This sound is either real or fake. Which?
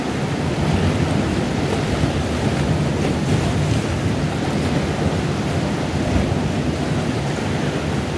real